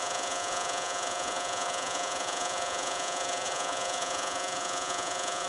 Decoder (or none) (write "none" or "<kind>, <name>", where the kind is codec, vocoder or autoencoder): vocoder, Vocos